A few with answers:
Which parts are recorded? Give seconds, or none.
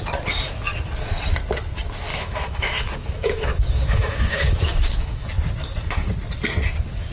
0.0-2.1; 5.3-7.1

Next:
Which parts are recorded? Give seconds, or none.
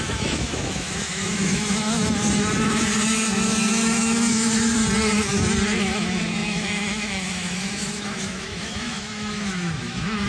2.0-2.6; 4.8-5.8